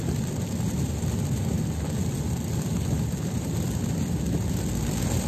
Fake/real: real